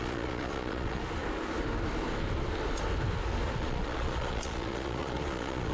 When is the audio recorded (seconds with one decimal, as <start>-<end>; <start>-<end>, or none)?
1.0-3.6